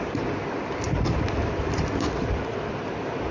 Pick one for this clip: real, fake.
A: real